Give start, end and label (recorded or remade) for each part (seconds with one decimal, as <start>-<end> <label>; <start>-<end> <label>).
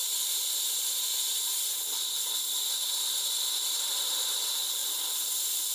0.0-1.5 remade; 1.5-3.7 recorded; 3.7-5.7 remade